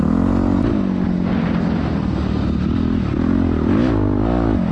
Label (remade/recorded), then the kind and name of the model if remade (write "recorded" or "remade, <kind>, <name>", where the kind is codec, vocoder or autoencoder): recorded